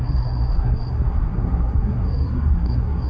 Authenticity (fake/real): fake